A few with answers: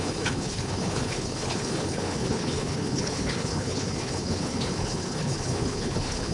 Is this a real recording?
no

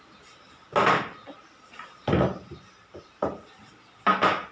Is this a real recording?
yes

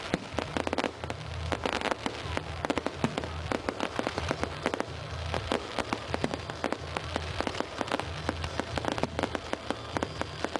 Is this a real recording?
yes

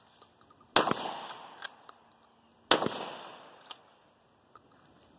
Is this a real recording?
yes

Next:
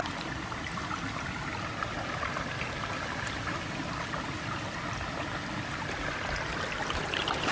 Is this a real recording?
yes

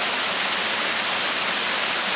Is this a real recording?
yes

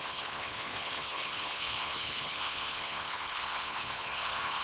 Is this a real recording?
no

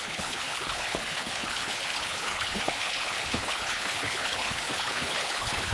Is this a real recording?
no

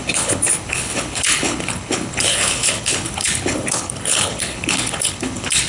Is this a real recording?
no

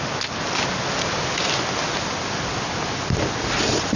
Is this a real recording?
yes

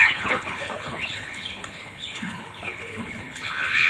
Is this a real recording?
no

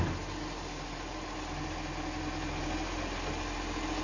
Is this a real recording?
yes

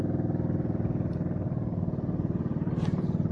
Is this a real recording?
yes